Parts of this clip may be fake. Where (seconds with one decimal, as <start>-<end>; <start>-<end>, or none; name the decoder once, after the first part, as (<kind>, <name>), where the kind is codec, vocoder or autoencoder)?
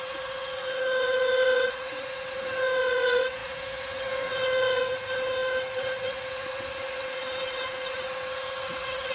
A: 0.0-9.1 (vocoder, WaveNeXt)